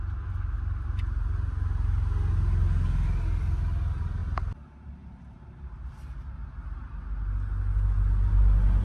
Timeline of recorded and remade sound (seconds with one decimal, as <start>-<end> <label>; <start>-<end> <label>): 0.0-8.8 recorded